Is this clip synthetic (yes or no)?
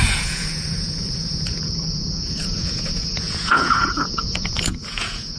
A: yes